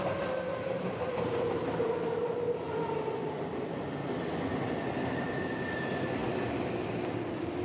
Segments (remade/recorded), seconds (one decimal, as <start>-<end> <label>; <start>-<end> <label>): 0.0-0.5 recorded; 0.5-4.0 remade; 4.0-4.5 recorded; 4.5-5.4 remade; 5.4-7.6 recorded